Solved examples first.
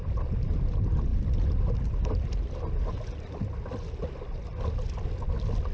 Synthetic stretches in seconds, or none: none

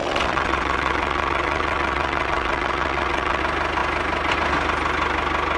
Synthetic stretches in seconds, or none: 0.0-3.4 (vocoder, WaveNeXt)

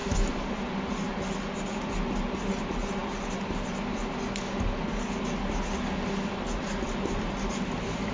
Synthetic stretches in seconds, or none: none

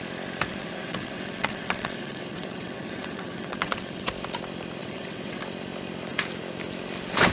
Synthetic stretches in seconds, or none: 0.5-4.1 (vocoder, WaveNeXt); 4.8-5.4

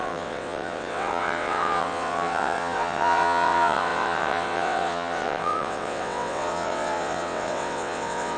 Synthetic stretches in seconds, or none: 0.0-8.4 (vocoder, WaveNeXt)

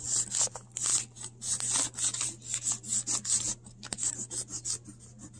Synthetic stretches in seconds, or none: none

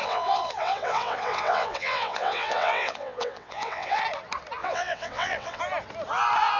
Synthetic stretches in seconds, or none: 0.0-4.0 (vocoder, WaveNeXt); 4.6-5.6